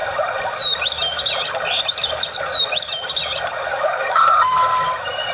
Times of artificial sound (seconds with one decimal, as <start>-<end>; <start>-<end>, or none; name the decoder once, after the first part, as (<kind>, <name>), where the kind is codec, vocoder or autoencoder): 3.7-4.2 (codec, DAC)